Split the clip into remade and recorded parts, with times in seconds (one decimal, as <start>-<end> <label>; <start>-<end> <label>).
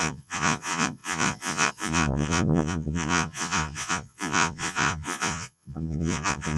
0.0-6.6 remade